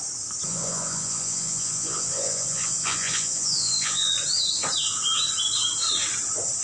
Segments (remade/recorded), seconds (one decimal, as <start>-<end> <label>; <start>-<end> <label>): 0.0-0.5 recorded; 0.5-4.1 remade; 4.1-6.6 recorded